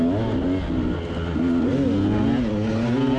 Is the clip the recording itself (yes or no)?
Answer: yes